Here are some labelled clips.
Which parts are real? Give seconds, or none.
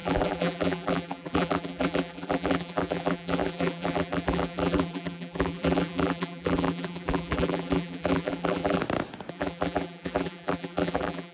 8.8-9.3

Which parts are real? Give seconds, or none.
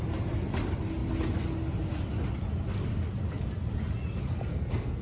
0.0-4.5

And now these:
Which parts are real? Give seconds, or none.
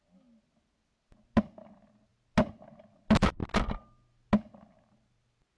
0.0-5.6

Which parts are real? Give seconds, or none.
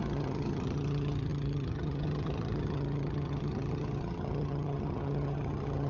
none